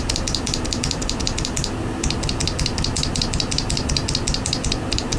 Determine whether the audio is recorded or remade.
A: remade